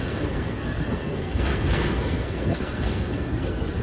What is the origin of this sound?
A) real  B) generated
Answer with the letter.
B